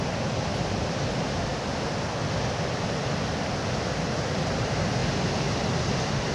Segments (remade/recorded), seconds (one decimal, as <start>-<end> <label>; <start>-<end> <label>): 0.0-0.5 remade; 0.5-1.1 recorded; 1.1-1.5 remade; 1.5-4.2 recorded; 4.2-5.0 remade; 5.0-6.3 recorded